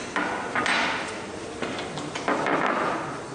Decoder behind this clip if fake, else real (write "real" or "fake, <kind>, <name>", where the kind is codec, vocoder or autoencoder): real